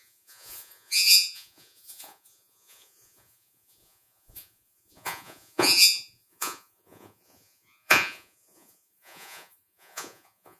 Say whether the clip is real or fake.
fake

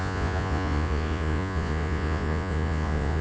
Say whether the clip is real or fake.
fake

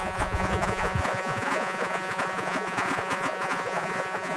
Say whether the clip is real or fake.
fake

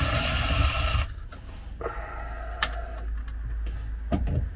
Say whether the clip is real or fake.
real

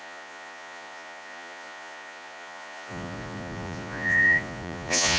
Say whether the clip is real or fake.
fake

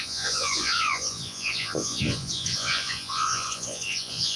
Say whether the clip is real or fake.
fake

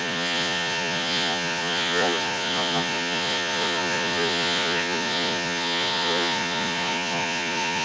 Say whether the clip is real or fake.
fake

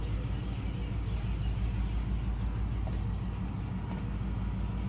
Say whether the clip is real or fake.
real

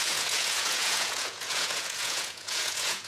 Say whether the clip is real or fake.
fake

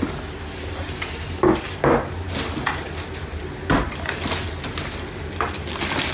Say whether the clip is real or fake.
real